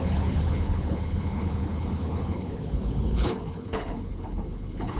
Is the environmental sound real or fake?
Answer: fake